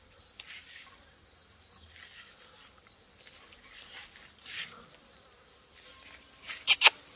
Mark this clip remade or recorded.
remade